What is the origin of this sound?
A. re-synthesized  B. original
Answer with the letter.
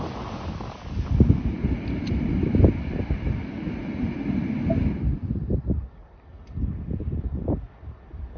B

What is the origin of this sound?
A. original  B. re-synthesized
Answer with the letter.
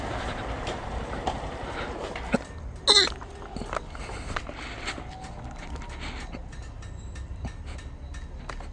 A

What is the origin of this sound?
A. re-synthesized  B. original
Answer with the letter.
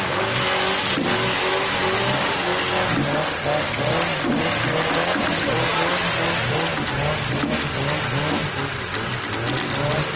B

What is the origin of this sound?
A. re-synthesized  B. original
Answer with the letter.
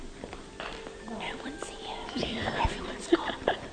A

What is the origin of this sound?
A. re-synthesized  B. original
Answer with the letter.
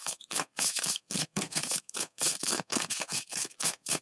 A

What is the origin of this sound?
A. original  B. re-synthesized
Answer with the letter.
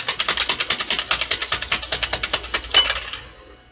A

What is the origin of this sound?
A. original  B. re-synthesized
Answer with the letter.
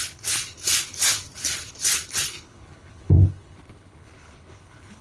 B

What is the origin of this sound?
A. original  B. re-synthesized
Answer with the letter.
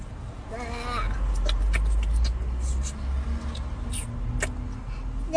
A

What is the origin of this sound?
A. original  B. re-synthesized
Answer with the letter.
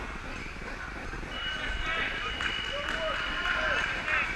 A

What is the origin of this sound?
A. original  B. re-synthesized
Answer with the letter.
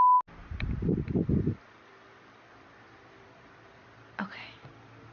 A